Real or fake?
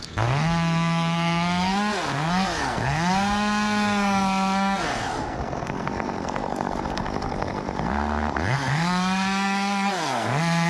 fake